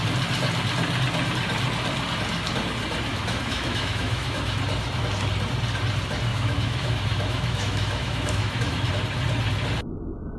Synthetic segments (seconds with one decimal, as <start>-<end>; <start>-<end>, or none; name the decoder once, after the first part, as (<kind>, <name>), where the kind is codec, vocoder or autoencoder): 3.1-4.6 (autoencoder, DAC-VAE); 6.3-8.9